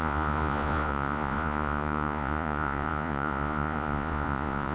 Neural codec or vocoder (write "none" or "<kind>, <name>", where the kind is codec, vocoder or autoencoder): vocoder, Vocos